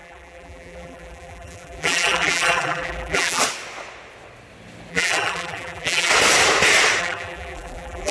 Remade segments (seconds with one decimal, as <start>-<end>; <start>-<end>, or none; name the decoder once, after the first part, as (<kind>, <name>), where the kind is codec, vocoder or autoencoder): 0.0-3.4 (vocoder, BigVGAN v2); 4.9-6.1; 7.0-8.1